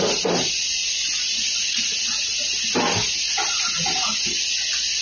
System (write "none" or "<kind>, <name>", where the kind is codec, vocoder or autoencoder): none